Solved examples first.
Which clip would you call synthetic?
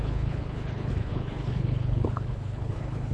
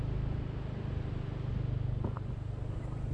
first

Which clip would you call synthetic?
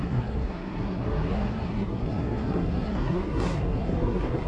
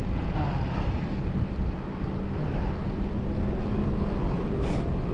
first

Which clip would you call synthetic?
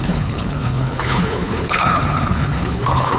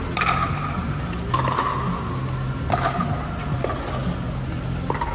first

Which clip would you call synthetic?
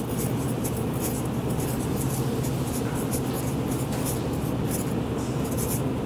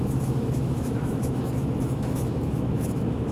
second